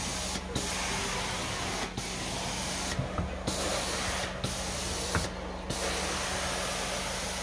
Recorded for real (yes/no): yes